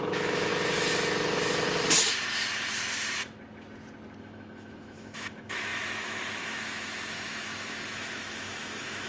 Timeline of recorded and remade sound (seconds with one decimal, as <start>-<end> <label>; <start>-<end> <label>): 0.0-0.5 remade; 0.5-4.2 recorded; 4.2-9.1 remade